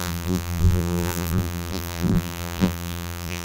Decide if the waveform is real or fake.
fake